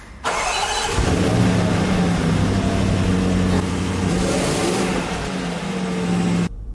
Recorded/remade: recorded